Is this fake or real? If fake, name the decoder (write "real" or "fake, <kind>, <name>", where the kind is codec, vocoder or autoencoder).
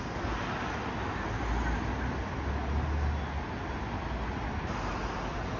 real